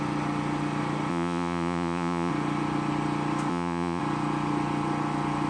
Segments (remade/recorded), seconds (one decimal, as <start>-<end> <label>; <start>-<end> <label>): 0.0-1.1 recorded; 1.1-2.3 remade; 2.3-3.5 recorded; 3.5-4.0 remade; 4.0-5.5 recorded